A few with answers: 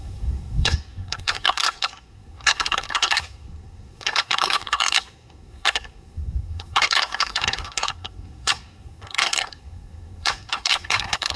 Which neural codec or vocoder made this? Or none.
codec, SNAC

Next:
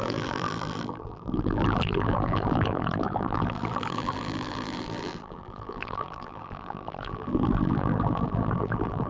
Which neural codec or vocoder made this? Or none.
vocoder, BigVGAN v2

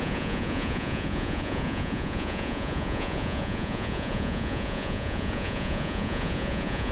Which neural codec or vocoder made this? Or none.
vocoder, Vocos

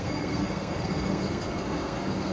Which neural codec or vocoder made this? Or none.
codec, SNAC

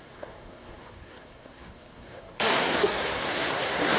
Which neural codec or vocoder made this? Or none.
codec, SNAC